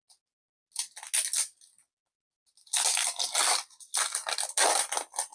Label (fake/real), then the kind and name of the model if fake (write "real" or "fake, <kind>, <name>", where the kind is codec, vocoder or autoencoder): real